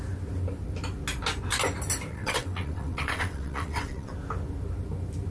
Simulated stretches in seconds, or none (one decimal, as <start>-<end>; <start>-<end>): 2.1-4.1